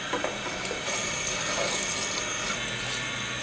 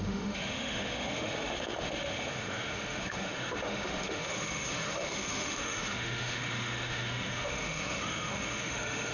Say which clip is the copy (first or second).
second